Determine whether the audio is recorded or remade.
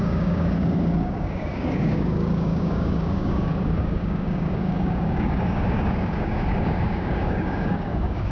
remade